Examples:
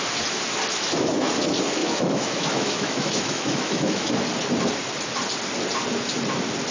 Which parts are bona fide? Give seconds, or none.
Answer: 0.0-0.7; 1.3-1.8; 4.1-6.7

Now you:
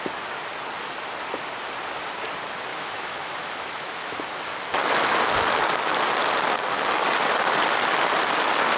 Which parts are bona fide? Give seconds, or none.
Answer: 0.0-2.7; 4.3-8.8

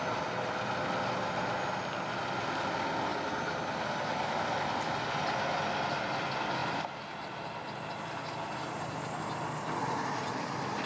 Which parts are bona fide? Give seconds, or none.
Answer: 0.0-10.9

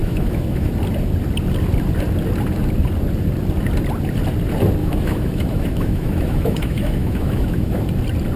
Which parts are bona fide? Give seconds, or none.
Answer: 0.7-4.8; 7.8-8.4

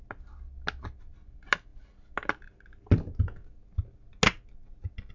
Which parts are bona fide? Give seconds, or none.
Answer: 0.0-5.1